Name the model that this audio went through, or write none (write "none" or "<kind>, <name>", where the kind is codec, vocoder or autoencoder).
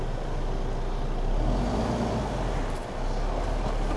none